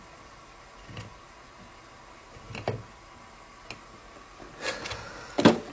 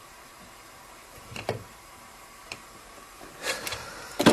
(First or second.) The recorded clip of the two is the first